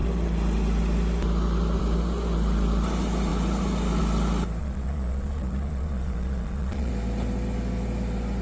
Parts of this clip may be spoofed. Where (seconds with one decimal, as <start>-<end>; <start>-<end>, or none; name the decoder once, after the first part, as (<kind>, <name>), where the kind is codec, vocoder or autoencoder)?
4.6-6.9 (vocoder, Vocos)